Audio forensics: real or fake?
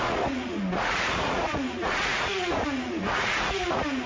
fake